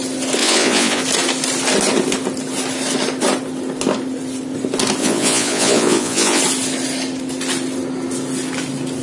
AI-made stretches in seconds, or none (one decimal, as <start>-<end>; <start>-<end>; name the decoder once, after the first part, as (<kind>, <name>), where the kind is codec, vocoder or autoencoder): 0.4-1.0 (vocoder, Vocos); 5.0-6.4